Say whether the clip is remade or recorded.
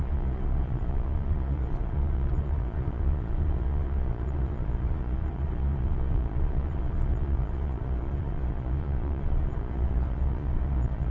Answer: remade